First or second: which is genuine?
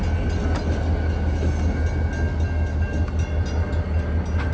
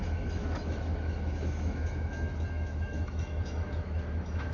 first